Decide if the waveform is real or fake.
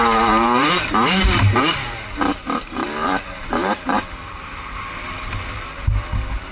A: fake